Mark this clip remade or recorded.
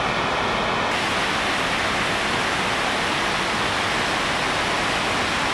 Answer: recorded